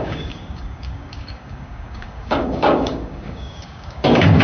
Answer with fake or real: fake